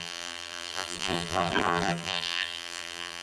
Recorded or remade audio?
remade